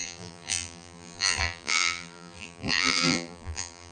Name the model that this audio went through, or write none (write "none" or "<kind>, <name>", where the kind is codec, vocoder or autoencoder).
vocoder, BigVGAN v2